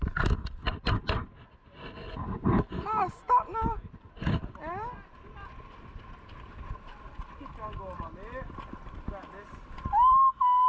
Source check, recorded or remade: recorded